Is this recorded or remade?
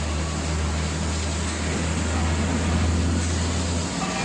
recorded